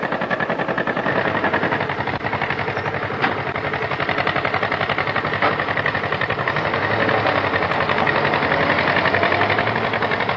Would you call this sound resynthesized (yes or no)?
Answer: no